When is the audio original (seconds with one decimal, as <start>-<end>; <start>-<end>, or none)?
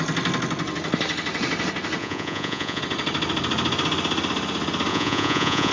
0.0-2.0; 2.8-4.9